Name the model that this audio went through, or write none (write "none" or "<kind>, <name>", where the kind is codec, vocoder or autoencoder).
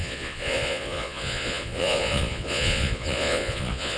vocoder, Vocos